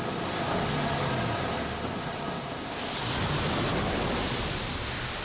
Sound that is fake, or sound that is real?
real